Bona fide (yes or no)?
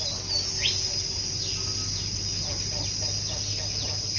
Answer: yes